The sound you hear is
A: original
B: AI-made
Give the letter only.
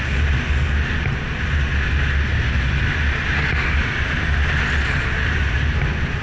A